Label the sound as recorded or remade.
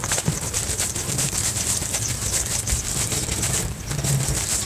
remade